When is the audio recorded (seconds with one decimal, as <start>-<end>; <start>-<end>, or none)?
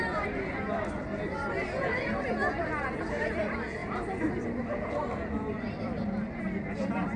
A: 0.0-3.8; 6.4-7.2